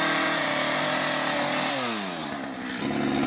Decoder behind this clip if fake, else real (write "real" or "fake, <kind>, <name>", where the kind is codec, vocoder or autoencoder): real